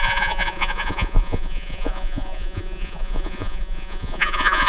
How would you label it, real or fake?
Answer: fake